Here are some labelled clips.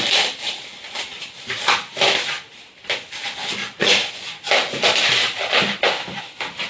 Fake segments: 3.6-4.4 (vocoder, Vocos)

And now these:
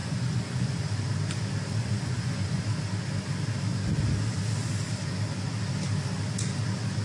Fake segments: 0.0-0.8 (vocoder, Vocos); 1.8-2.6

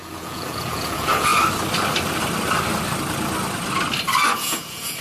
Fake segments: 0.0-1.3 (vocoder, Vocos); 4.3-5.0

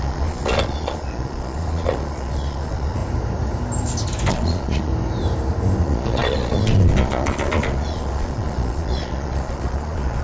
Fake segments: 0.0-3.0 (vocoder, Vocos); 4.3-4.9; 5.8-10.2

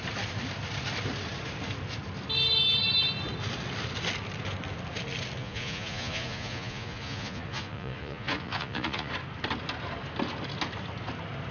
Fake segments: 5.4-9.1 (vocoder, Vocos)